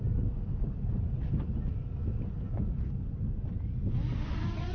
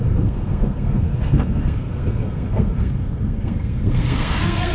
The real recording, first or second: first